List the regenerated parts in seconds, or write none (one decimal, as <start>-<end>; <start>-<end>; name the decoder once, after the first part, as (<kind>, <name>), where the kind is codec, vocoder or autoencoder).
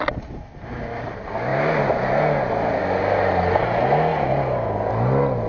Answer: none